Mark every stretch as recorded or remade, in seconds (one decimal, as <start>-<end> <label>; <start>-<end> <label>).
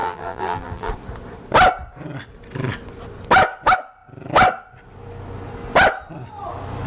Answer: 0.0-0.9 remade; 0.9-6.9 recorded